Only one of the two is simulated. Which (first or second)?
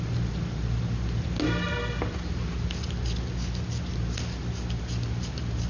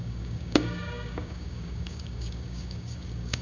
second